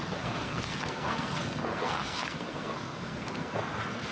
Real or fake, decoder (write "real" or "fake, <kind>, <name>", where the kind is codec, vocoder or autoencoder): fake, codec, SNAC